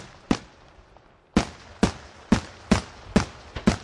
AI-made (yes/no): no